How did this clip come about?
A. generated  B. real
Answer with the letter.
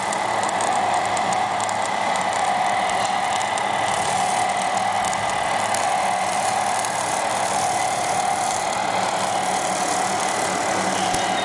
B